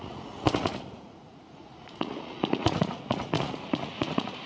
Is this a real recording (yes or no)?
no